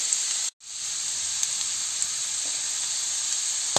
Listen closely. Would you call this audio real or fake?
real